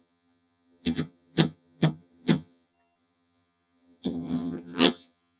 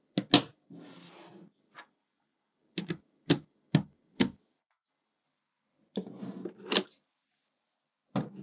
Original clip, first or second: second